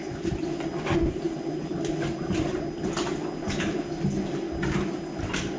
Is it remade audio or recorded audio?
recorded